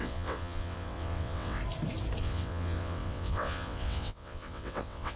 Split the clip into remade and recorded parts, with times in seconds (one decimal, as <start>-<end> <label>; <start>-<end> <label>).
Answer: 0.0-1.6 remade; 1.6-2.2 recorded; 2.2-5.2 remade